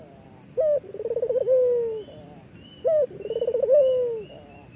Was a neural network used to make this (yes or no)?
no